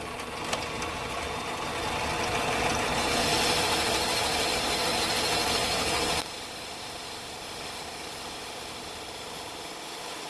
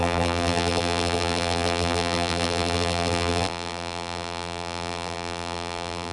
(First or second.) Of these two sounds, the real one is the first